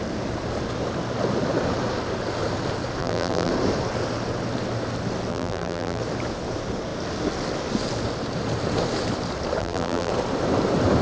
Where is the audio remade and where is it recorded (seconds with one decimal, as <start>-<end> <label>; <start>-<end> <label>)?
0.0-3.0 recorded; 3.0-3.5 remade; 3.5-5.3 recorded; 5.3-6.0 remade; 6.0-9.6 recorded; 9.6-10.1 remade; 10.1-11.0 recorded